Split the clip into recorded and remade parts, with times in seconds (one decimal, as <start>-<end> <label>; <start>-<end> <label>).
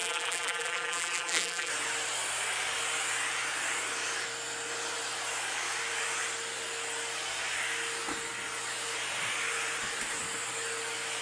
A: 0.0-1.7 remade; 1.7-11.2 recorded